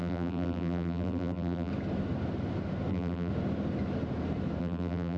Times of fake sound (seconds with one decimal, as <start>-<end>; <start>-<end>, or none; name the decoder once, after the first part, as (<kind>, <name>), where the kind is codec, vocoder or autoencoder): 0.0-1.7 (vocoder, BigVGAN v2); 2.9-3.3; 4.6-5.2